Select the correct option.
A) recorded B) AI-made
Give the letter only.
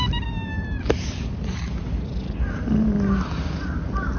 A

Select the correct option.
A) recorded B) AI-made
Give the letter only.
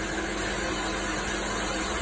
A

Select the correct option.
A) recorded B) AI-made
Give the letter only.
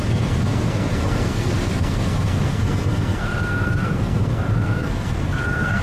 B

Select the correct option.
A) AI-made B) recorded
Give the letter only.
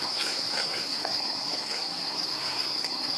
A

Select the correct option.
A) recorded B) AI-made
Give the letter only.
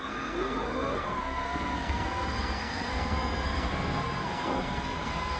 B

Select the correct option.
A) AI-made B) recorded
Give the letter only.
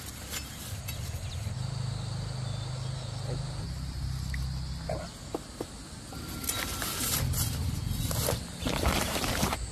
B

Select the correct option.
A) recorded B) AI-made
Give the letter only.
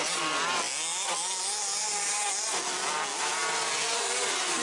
A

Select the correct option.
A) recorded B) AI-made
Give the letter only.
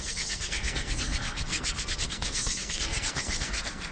B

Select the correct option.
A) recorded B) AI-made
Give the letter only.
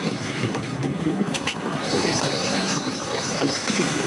B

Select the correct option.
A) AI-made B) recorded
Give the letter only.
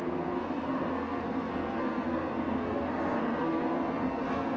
A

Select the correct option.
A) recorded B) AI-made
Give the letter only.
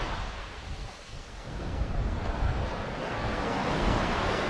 B